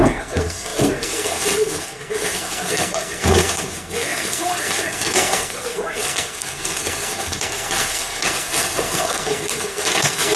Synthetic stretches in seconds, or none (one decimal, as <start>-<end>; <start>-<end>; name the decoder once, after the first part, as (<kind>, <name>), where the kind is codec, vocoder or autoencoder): 0.0-10.4 (codec, SNAC)